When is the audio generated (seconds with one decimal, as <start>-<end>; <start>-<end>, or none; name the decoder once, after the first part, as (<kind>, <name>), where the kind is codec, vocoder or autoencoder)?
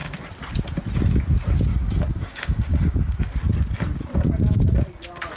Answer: 1.7-3.2 (codec, DAC)